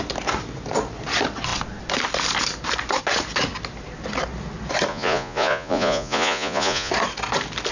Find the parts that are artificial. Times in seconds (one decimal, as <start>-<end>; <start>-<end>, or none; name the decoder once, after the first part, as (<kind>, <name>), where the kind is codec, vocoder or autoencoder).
4.9-6.9 (vocoder, Vocos)